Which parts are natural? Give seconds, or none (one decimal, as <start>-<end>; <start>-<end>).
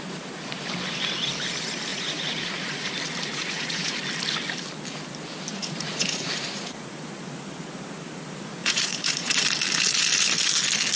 0.0-1.9; 2.9-3.3; 4.0-5.5; 6.9-8.6; 9.4-11.0